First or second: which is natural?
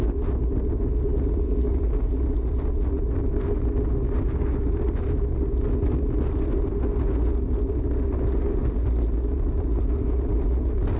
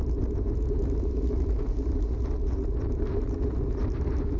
first